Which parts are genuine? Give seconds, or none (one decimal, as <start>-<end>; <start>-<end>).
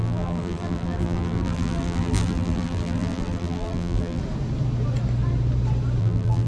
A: 4.2-6.0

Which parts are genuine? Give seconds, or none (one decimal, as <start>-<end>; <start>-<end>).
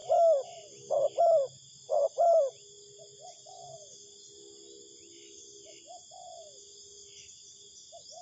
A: 0.0-8.2